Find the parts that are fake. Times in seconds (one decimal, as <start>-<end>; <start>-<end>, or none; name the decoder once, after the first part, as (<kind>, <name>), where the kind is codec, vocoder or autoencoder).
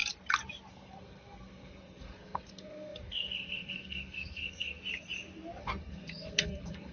0.7-4.8 (codec, SNAC); 5.6-6.9